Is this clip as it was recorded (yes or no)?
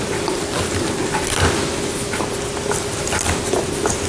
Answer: yes